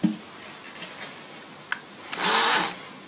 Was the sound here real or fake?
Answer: real